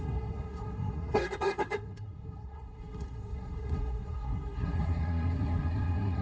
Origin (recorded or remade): remade